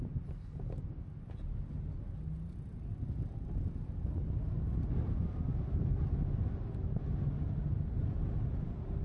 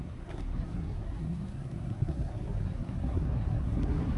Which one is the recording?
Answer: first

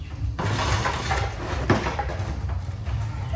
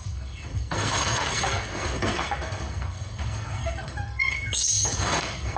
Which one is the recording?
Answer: first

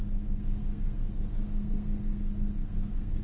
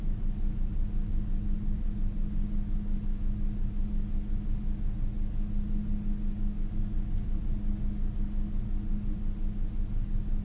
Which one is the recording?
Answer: second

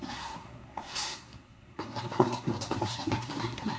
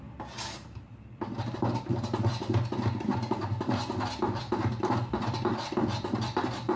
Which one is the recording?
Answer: second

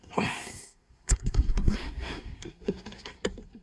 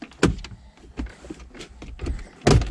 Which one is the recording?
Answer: second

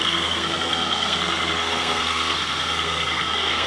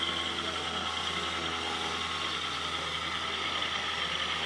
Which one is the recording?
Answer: second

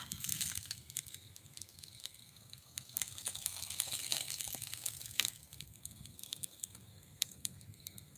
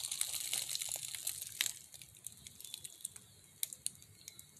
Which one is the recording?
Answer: second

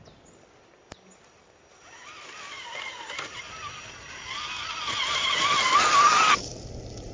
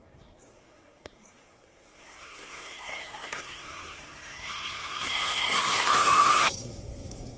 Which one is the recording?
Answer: first